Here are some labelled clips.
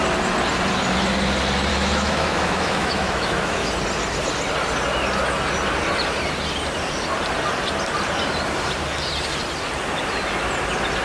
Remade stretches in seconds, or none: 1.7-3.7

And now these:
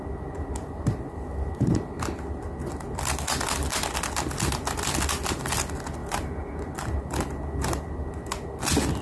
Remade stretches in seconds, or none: none

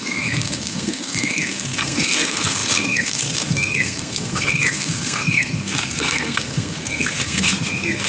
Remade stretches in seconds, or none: 0.0-8.1

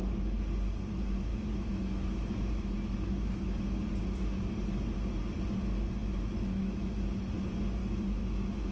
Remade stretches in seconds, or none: 1.3-3.8; 6.0-6.9; 7.8-8.7